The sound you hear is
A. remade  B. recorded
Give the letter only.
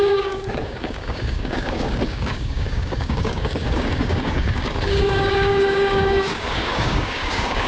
A